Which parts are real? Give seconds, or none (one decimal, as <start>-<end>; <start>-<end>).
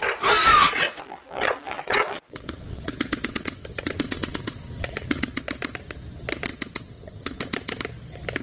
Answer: 0.0-0.6; 5.4-6.5; 7.8-8.4